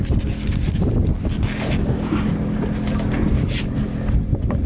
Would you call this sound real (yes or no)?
yes